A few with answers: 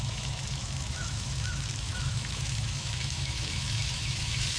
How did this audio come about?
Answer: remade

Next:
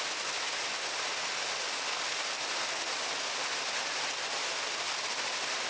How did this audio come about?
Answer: recorded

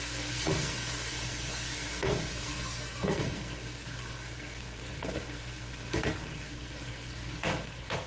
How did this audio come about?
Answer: remade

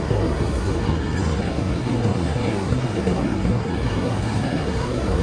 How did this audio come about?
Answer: remade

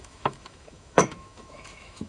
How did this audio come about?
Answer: remade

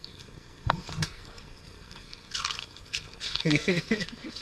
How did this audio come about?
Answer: remade